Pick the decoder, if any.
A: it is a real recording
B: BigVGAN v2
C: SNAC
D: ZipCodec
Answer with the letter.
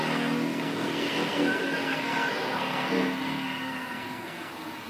C